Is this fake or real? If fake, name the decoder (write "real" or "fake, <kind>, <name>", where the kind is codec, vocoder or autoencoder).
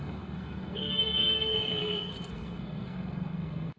fake, codec, SNAC